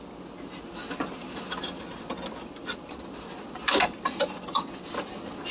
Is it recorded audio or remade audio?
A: recorded